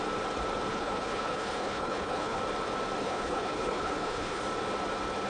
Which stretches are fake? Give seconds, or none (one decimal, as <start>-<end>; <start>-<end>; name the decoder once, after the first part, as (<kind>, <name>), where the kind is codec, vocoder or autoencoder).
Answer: 0.7-2.4 (codec, HILCodec); 3.0-4.4